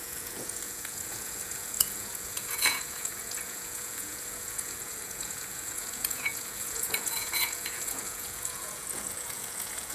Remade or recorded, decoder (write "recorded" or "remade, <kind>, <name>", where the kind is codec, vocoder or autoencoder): remade, vocoder, Vocos